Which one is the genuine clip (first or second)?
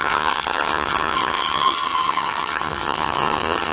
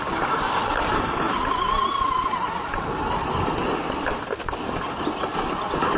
second